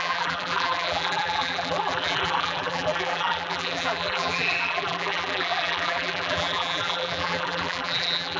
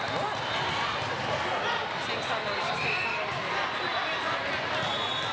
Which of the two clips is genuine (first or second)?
second